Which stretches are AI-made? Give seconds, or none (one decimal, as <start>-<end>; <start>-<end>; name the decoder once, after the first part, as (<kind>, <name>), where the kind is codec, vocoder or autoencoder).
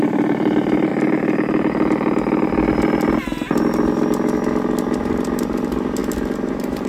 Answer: 0.0-0.9 (vocoder, BigVGAN v2); 5.0-6.0; 6.5-6.9